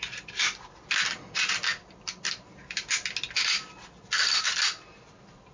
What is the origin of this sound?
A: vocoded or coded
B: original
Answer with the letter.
B